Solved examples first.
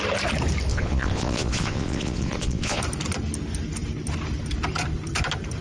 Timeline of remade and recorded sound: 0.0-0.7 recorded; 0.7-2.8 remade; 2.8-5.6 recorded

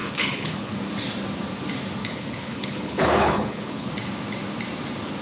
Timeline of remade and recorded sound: 0.0-0.7 remade; 0.7-2.0 recorded; 2.0-3.9 remade; 3.9-5.2 recorded

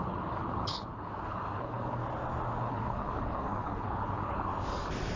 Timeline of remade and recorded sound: 0.0-2.0 remade; 2.0-2.6 recorded; 2.6-4.5 remade; 4.5-5.2 recorded

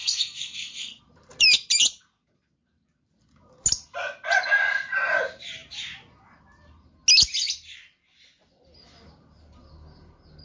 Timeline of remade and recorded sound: 0.0-1.0 remade; 1.0-10.4 recorded